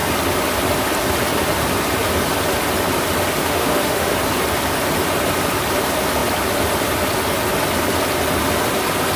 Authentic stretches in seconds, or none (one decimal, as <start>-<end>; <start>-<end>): 0.0-3.4; 4.1-9.2